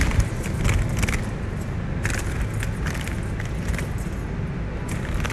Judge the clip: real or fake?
real